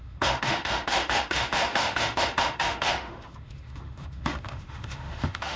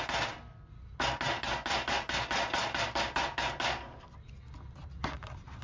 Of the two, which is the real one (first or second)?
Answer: second